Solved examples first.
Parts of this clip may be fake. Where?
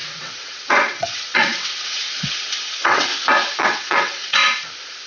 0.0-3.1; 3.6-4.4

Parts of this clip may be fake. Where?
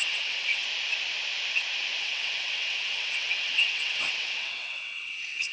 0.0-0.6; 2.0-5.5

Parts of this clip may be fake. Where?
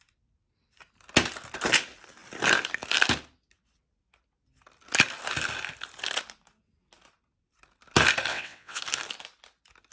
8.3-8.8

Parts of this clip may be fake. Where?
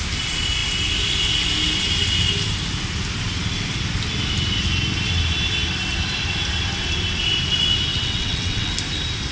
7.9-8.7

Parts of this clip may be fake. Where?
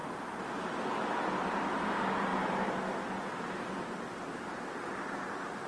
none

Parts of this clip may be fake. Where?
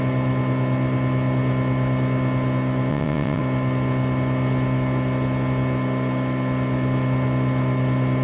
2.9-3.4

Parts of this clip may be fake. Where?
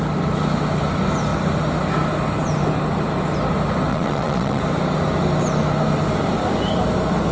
3.9-4.6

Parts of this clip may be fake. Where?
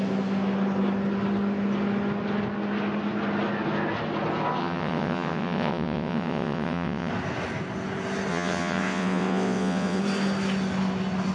4.6-7.1; 8.3-10.0